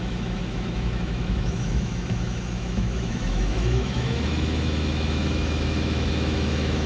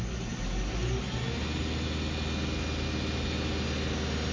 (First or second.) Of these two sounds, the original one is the second